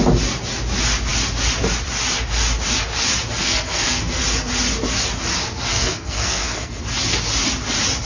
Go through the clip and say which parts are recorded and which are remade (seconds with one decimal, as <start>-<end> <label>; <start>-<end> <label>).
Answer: 0.0-3.4 recorded; 3.4-4.2 remade; 4.2-5.7 recorded; 5.7-6.8 remade; 6.8-8.1 recorded